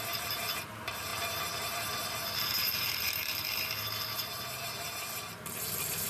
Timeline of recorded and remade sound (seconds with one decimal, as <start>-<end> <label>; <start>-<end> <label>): 0.0-6.1 remade